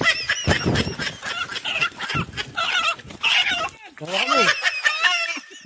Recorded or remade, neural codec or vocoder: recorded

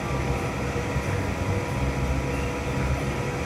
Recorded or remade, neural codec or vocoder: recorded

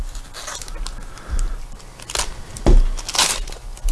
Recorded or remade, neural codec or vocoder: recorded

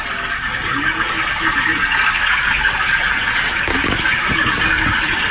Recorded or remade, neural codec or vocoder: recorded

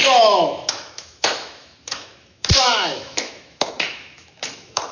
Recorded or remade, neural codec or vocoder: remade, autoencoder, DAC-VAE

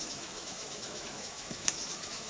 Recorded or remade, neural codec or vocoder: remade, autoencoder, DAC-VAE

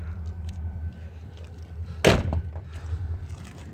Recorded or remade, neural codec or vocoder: recorded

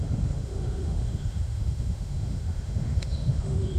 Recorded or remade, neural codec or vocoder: remade, autoencoder, DAC-VAE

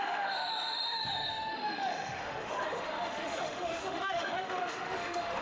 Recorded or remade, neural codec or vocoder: remade, autoencoder, DAC-VAE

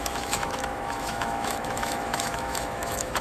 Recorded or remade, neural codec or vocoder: remade, autoencoder, DAC-VAE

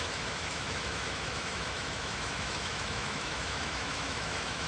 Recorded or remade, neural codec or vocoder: remade, autoencoder, DAC-VAE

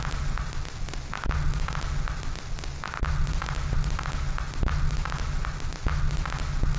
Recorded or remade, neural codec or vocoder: recorded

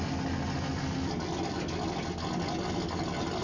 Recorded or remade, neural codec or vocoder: recorded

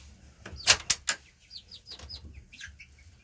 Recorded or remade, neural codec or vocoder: recorded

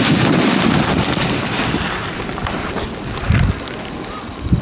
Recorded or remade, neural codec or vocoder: recorded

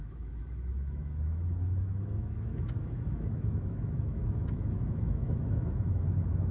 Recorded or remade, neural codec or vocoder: remade, autoencoder, DAC-VAE